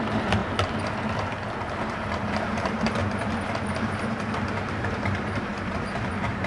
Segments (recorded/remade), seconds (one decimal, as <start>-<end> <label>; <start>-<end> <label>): 0.0-0.4 remade; 0.4-1.7 recorded; 1.7-3.0 remade; 3.0-4.8 recorded; 4.8-6.5 remade